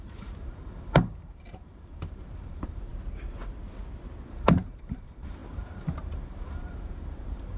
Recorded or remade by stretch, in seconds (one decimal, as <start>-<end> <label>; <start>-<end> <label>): 0.0-2.9 remade; 2.9-4.3 recorded; 4.3-7.6 remade